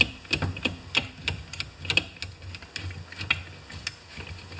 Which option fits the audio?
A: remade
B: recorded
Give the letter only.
B